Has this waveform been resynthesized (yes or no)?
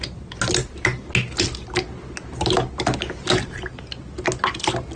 no